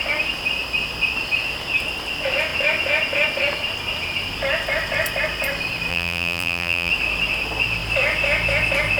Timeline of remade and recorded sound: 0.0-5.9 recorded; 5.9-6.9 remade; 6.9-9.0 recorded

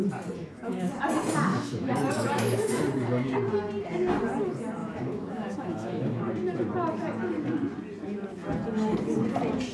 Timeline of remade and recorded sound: 0.0-0.4 recorded; 0.4-0.9 remade; 0.9-1.5 recorded; 1.5-2.7 remade; 2.7-4.8 recorded; 4.8-6.2 remade; 6.2-9.7 recorded

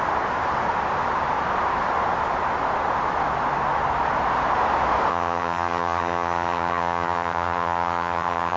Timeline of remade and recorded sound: 0.0-5.1 recorded; 5.1-8.6 remade

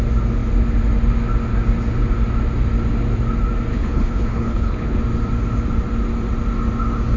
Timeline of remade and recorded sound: 0.0-3.7 recorded; 3.7-5.0 remade; 5.0-7.2 recorded

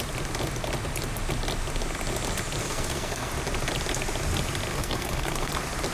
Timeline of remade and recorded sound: 0.0-2.6 recorded; 2.6-3.3 remade; 3.3-4.7 recorded; 4.7-5.5 remade; 5.5-5.9 recorded

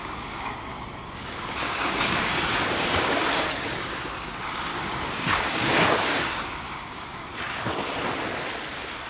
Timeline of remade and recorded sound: 0.0-7.3 remade; 7.3-9.1 recorded

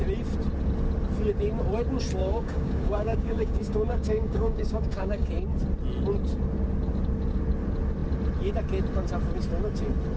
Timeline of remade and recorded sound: 0.0-2.2 recorded; 2.2-5.3 remade; 5.3-10.2 recorded

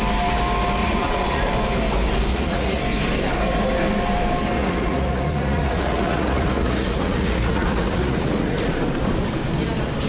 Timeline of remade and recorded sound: 0.0-0.8 recorded; 0.8-1.5 remade; 1.5-2.3 recorded; 2.3-2.8 remade; 2.8-4.6 recorded; 4.6-8.7 remade; 8.7-10.1 recorded